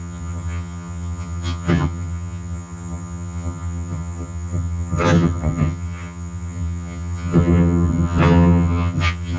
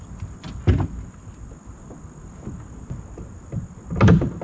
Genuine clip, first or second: second